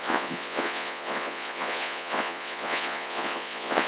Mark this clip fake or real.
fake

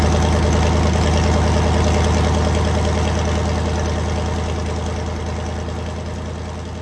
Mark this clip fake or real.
real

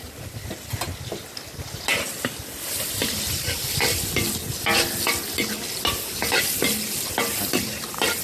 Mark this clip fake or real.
real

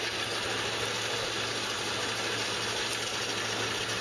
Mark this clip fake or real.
real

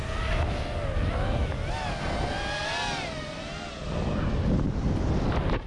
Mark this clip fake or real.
real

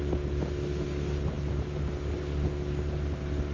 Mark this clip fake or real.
real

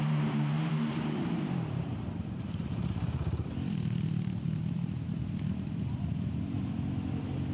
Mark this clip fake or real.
fake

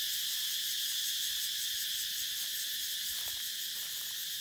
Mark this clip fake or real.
real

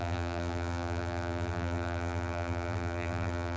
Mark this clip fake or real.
fake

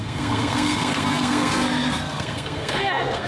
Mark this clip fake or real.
fake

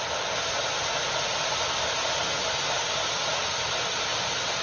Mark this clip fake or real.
real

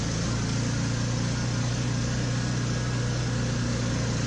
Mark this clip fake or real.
real